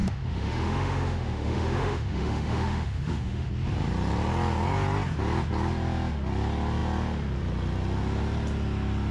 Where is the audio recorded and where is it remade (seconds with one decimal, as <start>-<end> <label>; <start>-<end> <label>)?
0.0-3.5 remade; 3.5-9.1 recorded